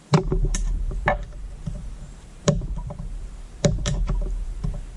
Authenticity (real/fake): fake